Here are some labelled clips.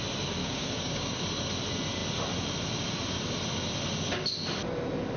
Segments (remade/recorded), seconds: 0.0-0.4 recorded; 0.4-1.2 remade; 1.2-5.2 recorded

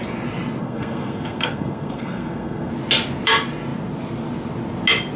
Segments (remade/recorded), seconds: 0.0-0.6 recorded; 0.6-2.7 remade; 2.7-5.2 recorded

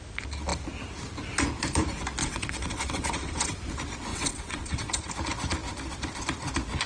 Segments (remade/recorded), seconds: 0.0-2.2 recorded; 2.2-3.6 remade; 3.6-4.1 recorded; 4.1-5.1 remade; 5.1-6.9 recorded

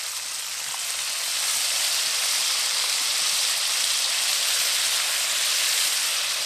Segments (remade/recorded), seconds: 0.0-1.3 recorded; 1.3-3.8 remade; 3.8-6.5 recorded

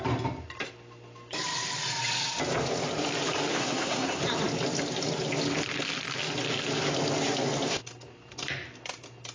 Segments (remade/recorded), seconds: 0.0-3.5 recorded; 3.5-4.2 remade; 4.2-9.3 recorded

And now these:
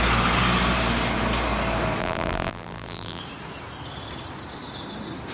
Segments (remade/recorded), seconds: 0.0-2.0 recorded; 2.0-3.2 remade; 3.2-5.3 recorded